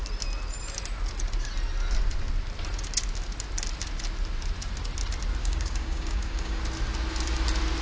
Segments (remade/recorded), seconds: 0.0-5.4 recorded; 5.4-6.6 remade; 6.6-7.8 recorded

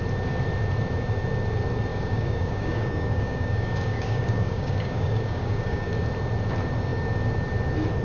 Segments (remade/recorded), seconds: 0.0-1.9 recorded; 1.9-5.9 remade; 5.9-8.0 recorded

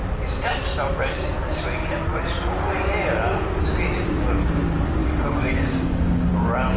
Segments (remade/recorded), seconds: 0.0-5.0 recorded; 5.0-6.3 remade; 6.3-6.8 recorded

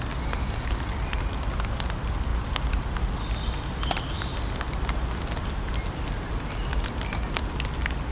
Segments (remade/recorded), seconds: 0.0-8.1 recorded

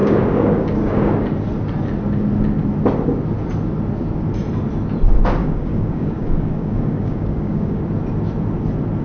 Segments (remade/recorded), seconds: 0.0-1.1 remade; 1.1-5.4 recorded; 5.4-7.8 remade; 7.8-9.0 recorded

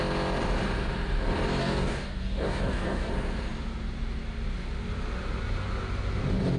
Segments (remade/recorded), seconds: 0.0-1.6 recorded; 1.6-3.1 remade; 3.1-6.6 recorded

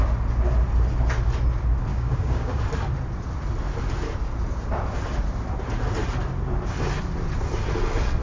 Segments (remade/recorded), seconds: 0.0-1.9 recorded; 1.9-2.6 remade; 2.6-8.2 recorded